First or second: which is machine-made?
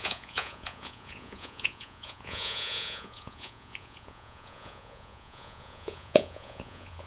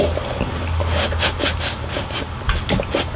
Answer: first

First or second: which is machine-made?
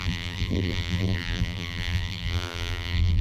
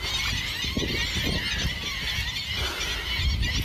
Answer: first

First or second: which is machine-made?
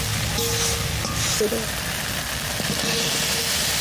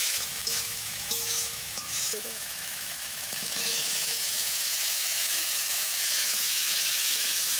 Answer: second